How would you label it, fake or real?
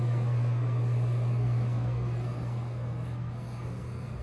fake